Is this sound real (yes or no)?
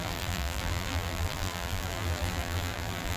no